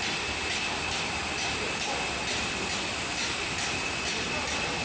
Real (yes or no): yes